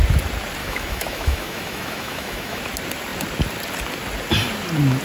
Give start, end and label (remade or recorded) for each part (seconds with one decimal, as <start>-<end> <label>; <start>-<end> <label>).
0.0-0.6 recorded; 0.6-2.6 remade; 2.6-5.0 recorded

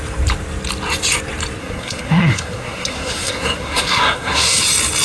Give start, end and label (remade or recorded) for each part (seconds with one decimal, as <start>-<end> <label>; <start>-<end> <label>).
0.0-1.6 recorded; 1.6-4.6 remade; 4.6-5.0 recorded

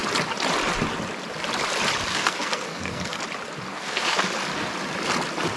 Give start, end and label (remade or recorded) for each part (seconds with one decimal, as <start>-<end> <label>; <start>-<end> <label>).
0.0-2.1 recorded; 2.1-3.2 remade; 3.2-3.7 recorded; 3.7-4.2 remade; 4.2-5.6 recorded

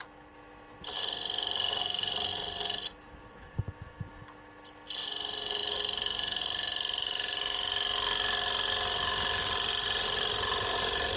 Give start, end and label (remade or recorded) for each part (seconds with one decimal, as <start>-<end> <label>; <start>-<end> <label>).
0.0-11.2 recorded

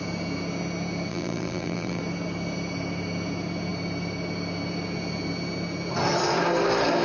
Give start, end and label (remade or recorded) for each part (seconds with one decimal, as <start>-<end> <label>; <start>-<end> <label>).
0.0-1.1 recorded; 1.1-2.0 remade; 2.0-7.0 recorded